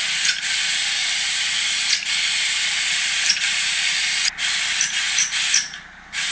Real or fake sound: real